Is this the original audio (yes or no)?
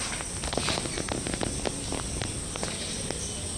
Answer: yes